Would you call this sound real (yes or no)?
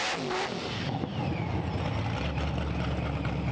yes